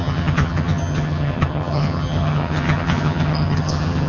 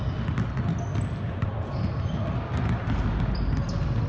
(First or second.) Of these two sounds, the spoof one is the first